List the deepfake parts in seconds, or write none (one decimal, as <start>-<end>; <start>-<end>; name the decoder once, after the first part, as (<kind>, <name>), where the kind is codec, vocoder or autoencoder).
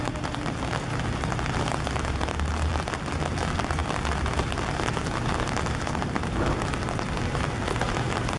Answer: none